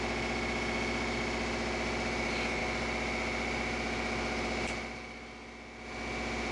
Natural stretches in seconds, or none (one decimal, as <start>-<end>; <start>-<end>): 0.0-6.5